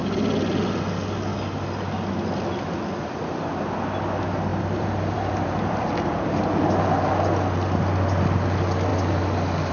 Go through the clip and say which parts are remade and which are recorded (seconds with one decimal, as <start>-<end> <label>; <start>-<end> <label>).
0.0-4.5 recorded; 4.5-6.8 remade; 6.8-9.7 recorded